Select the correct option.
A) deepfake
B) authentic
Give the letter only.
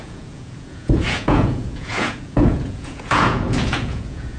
A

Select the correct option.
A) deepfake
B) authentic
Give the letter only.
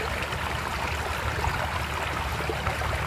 B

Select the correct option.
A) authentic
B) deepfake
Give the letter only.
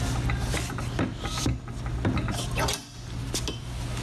A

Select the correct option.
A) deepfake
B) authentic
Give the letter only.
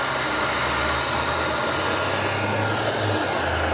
B